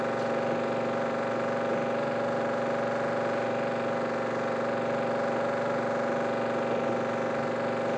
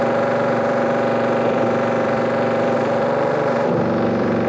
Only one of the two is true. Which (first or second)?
first